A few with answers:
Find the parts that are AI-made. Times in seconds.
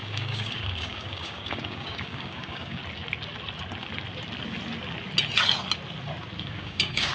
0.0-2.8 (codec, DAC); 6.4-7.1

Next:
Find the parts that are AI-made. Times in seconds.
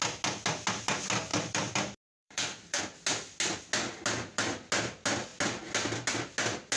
1.3-2.8 (vocoder, BigVGAN v2)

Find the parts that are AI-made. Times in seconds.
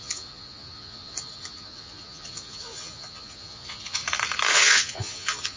0.0-4.0 (vocoder, Vocos); 4.5-5.6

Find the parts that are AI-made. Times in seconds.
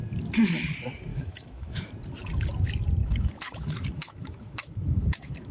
1.1-1.9 (autoencoder, DAC-VAE); 3.0-5.5